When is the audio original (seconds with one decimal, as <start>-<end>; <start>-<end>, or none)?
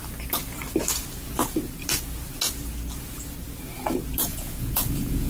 0.0-4.3